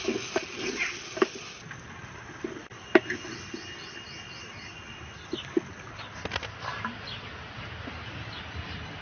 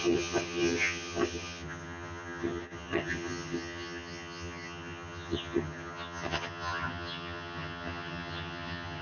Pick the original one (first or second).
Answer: first